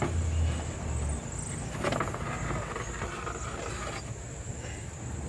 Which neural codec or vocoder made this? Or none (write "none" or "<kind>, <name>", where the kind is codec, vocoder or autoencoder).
none